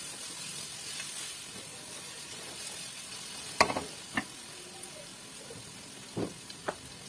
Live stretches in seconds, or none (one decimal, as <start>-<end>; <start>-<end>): 0.0-1.7; 2.5-7.1